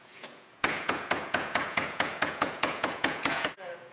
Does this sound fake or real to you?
fake